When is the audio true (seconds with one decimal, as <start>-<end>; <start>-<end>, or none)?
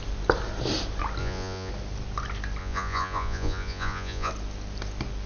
0.0-1.2; 1.7-2.6; 4.3-5.3